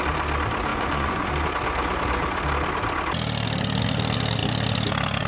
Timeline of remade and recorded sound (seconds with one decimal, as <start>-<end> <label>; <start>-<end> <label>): 0.0-0.7 recorded; 0.7-1.3 remade; 1.3-5.3 recorded